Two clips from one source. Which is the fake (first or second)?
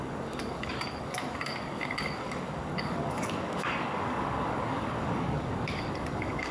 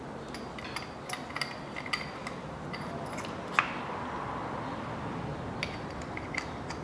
first